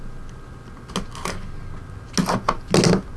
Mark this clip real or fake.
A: real